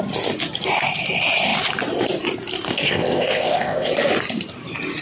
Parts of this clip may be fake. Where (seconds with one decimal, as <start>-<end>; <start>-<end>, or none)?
2.7-3.9